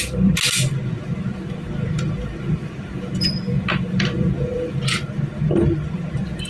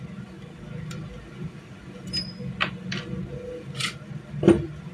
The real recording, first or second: second